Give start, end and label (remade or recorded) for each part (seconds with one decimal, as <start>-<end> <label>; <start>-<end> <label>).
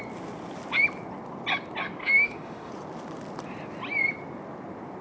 0.0-2.0 recorded; 2.0-2.7 remade; 2.7-5.0 recorded